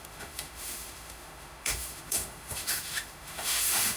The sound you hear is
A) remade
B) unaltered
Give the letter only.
A